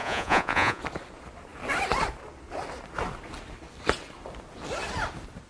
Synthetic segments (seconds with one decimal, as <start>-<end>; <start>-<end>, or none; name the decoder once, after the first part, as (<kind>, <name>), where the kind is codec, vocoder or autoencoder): 0.0-0.8 (vocoder, Vocos)